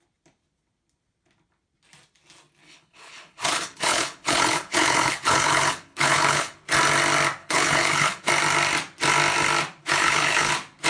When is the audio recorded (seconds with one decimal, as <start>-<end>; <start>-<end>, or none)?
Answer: 0.0-2.6; 6.6-7.4; 8.3-9.8; 10.5-10.9